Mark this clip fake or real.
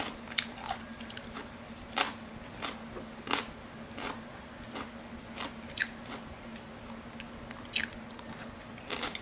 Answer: real